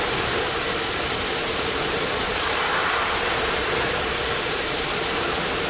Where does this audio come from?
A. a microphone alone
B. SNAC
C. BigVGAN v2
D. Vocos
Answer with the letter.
A